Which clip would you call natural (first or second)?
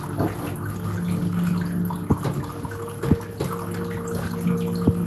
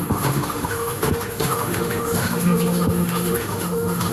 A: first